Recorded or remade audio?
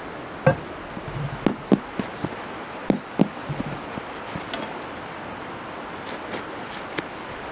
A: recorded